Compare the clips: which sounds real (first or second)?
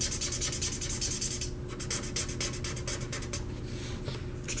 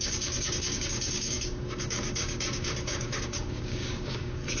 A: first